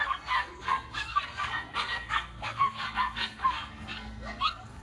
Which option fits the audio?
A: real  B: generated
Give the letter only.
B